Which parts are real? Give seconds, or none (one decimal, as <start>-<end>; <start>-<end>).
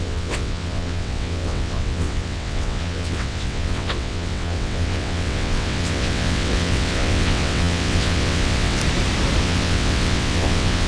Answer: 8.8-9.4